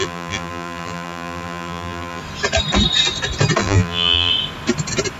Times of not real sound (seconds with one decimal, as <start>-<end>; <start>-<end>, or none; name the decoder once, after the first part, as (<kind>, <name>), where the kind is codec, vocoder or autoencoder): 0.0-2.2 (vocoder, BigVGAN v2); 3.6-4.3